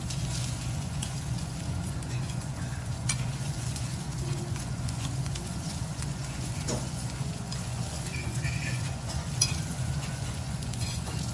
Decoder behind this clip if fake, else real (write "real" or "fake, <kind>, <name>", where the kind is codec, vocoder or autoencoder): fake, vocoder, Vocos